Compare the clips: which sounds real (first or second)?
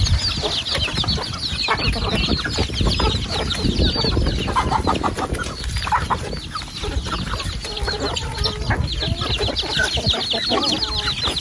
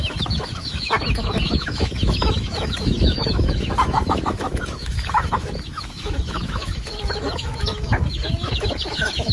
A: first